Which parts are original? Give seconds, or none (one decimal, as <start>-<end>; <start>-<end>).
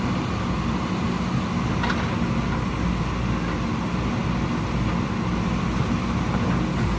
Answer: 0.0-7.0